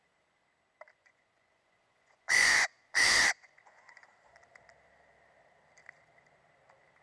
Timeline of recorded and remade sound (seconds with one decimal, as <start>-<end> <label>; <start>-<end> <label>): 0.0-1.0 recorded; 1.0-4.0 remade; 4.0-7.0 recorded